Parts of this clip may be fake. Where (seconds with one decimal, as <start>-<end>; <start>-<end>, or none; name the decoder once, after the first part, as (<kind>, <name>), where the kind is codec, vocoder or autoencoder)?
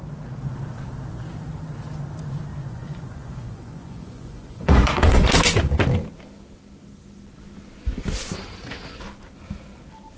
2.6-5.3 (vocoder, Vocos)